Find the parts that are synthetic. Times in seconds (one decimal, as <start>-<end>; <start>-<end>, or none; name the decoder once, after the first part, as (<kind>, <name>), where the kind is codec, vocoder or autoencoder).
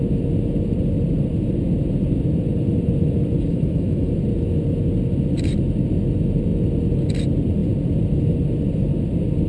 3.5-4.1 (autoencoder, DAC-VAE)